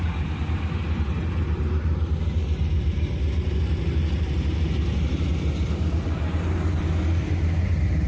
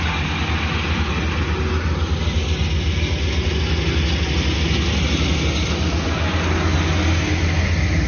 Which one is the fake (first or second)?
first